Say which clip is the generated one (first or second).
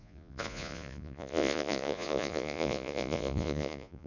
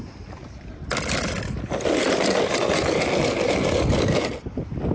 first